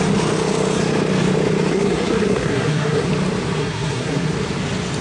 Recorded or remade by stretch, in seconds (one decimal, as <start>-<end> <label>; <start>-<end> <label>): 0.0-1.7 recorded; 1.7-3.1 remade; 3.1-3.6 recorded; 3.6-4.3 remade; 4.3-5.0 recorded